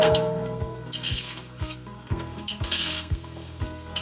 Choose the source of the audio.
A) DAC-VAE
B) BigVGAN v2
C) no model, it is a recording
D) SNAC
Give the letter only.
D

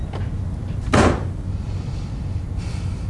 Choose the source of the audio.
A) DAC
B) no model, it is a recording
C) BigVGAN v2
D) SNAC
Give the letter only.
B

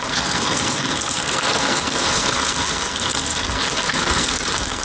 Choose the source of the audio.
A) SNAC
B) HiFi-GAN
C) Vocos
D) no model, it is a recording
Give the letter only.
A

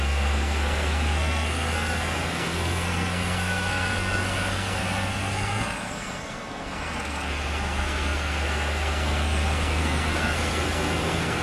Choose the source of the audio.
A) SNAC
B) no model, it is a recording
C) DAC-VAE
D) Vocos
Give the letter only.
A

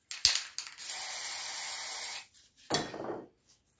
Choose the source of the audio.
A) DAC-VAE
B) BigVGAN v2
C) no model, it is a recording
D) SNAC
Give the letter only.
C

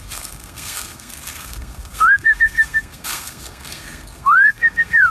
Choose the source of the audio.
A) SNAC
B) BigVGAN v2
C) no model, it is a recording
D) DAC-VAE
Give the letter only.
A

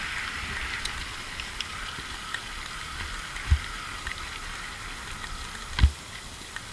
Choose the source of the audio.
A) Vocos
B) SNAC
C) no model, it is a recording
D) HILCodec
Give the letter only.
C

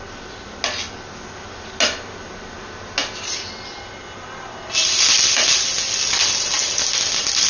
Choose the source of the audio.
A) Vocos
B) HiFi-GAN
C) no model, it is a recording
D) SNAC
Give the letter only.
C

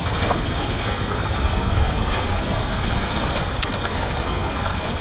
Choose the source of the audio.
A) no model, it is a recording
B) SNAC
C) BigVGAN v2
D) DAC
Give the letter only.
B